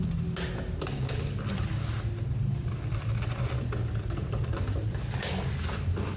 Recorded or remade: recorded